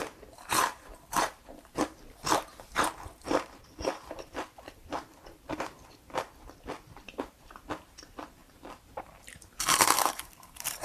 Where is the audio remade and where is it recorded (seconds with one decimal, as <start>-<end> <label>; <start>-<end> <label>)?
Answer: 0.0-6.3 remade; 6.3-6.8 recorded; 6.8-10.8 remade